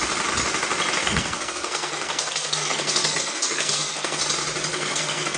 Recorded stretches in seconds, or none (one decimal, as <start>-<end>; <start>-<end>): 0.0-1.0; 4.2-4.7